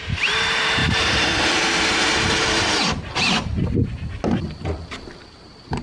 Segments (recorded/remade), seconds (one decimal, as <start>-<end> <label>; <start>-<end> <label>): 0.0-3.8 remade; 3.8-5.2 recorded; 5.2-5.8 remade